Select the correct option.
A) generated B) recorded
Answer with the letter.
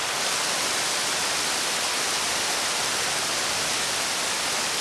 B